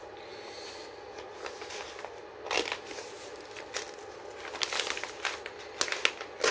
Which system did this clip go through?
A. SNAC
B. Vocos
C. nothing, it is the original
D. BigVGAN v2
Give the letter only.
C